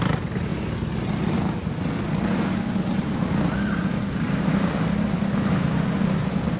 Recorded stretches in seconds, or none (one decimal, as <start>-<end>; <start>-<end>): 0.0-6.6